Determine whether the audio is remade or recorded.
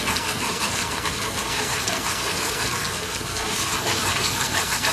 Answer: remade